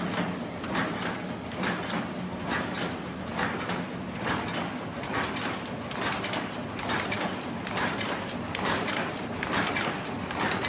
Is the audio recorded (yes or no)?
yes